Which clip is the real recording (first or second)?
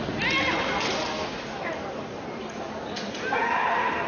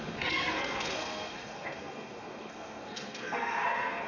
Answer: first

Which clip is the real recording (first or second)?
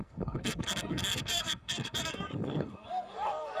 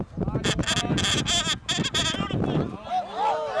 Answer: second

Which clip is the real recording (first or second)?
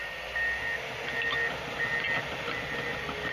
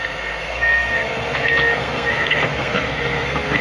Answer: first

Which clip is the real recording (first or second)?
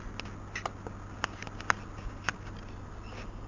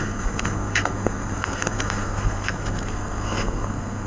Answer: first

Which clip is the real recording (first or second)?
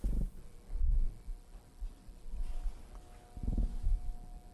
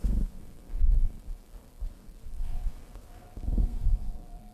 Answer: first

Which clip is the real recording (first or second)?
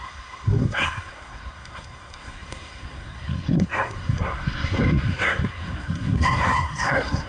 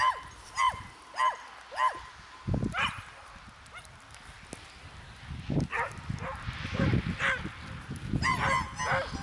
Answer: second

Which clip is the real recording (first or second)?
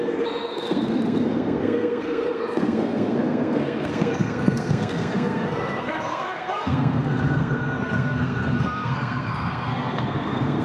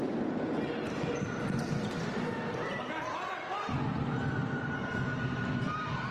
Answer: second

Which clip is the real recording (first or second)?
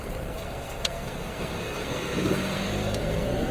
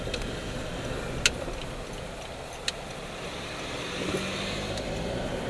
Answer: second